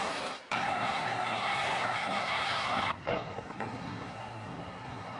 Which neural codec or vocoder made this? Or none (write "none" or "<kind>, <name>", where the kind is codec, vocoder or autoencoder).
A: codec, SNAC